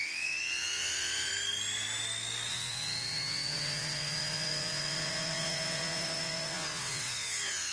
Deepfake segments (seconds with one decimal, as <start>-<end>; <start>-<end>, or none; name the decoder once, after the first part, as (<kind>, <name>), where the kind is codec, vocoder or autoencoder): 0.0-1.3 (vocoder, WaveNeXt); 2.5-7.7